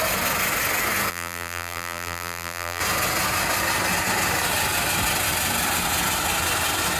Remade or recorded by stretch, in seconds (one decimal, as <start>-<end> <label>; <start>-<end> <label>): 0.0-1.1 recorded; 1.1-2.8 remade; 2.8-7.0 recorded